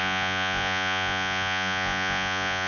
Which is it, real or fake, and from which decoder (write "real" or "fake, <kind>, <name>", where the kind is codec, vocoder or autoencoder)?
fake, vocoder, Vocos